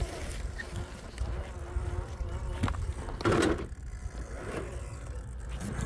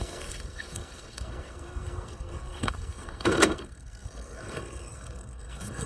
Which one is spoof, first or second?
second